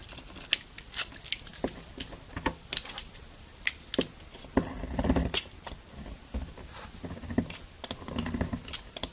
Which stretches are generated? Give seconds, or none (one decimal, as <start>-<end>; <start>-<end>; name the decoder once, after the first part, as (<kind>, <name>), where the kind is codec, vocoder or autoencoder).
none